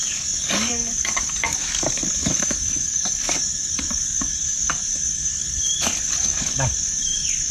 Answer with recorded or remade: remade